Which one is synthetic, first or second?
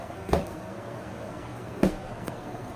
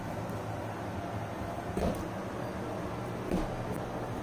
first